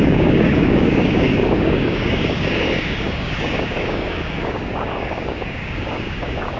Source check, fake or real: fake